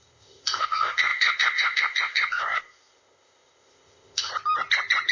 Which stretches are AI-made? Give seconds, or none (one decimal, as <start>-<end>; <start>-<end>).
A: 0.0-4.3